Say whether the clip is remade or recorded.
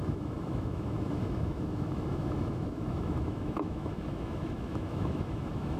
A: remade